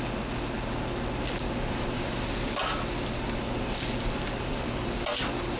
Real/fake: real